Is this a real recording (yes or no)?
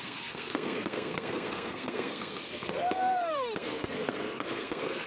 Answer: no